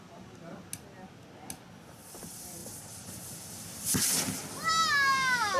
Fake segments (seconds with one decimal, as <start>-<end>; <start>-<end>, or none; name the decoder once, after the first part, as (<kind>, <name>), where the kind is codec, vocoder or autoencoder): none